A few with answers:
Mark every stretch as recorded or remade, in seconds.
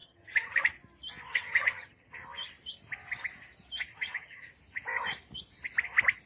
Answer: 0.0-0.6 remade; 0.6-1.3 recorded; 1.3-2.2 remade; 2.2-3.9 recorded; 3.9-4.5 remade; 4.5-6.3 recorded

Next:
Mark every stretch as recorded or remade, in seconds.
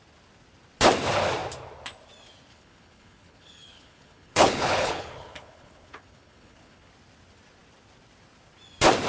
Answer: 0.0-2.5 recorded; 2.5-6.9 remade; 6.9-9.1 recorded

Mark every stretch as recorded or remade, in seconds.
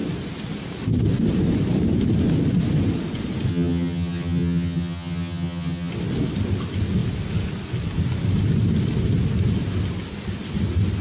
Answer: 0.0-3.5 recorded; 3.5-5.9 remade; 5.9-11.0 recorded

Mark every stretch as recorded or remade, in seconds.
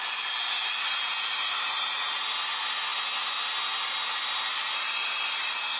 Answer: 0.0-5.8 recorded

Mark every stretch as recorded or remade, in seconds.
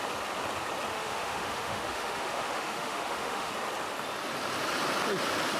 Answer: 0.0-0.9 recorded; 0.9-3.5 remade; 3.5-5.6 recorded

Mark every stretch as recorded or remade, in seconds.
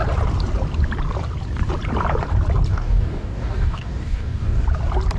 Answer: 0.0-2.7 recorded; 2.7-4.6 remade; 4.6-5.2 recorded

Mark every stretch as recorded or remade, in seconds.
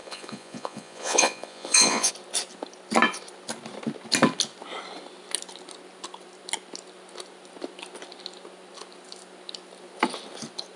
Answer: 0.0-2.1 remade; 2.1-10.8 recorded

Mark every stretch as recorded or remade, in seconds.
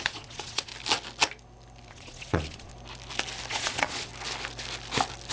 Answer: 0.0-0.7 remade; 0.7-1.9 recorded; 1.9-2.7 remade; 2.7-3.5 recorded; 3.5-4.1 remade; 4.1-5.3 recorded